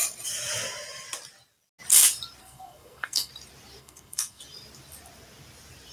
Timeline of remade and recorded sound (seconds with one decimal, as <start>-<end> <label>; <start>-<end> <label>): 0.0-2.4 recorded; 2.4-3.3 remade; 3.3-3.8 recorded; 3.8-4.4 remade; 4.4-5.9 recorded